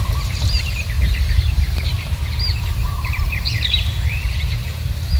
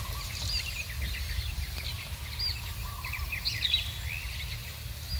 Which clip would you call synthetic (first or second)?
first